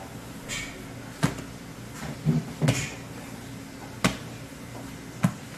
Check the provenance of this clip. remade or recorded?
recorded